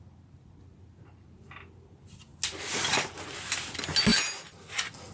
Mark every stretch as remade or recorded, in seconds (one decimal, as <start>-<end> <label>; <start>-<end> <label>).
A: 0.0-5.1 recorded